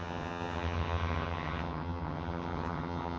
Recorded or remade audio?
remade